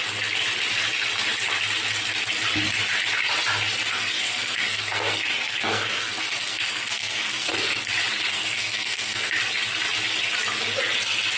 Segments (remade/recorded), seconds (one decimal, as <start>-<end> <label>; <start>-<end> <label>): 0.0-3.9 recorded; 3.9-7.9 remade; 7.9-8.3 recorded; 8.3-9.3 remade; 9.3-11.4 recorded